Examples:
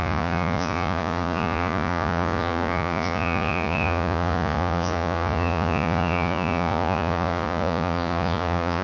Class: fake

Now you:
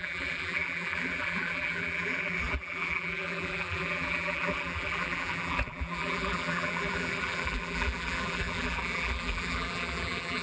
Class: fake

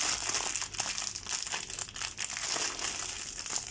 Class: real